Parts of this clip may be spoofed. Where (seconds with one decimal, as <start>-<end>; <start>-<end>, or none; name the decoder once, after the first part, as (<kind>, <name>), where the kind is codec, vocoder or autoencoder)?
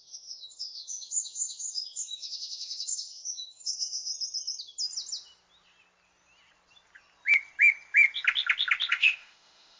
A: 0.0-4.1 (autoencoder, DAC-VAE); 8.9-9.8